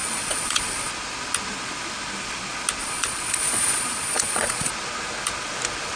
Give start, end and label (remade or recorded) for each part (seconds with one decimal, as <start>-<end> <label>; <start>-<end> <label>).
0.0-0.9 remade; 0.9-2.8 recorded; 2.8-4.7 remade; 4.7-6.0 recorded